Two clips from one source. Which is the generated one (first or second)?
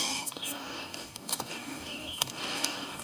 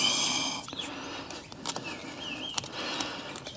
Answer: first